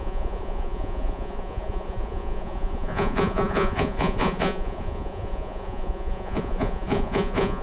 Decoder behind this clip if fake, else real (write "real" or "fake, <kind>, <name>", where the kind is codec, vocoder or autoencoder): fake, vocoder, Vocos